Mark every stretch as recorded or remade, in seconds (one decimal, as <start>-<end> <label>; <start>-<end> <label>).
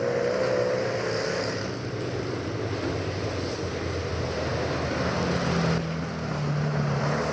0.0-7.3 recorded